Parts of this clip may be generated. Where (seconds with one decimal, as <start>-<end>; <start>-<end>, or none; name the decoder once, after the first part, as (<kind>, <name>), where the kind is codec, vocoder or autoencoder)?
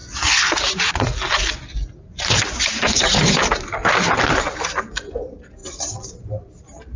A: 5.6-6.4 (vocoder, BigVGAN v2)